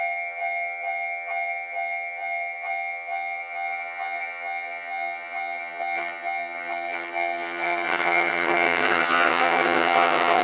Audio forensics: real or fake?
fake